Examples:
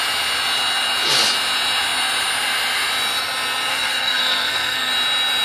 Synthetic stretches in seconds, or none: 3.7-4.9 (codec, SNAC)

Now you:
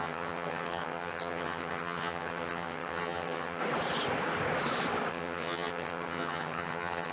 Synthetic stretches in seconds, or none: 0.0-3.6 (vocoder, HiFi-GAN); 5.1-7.1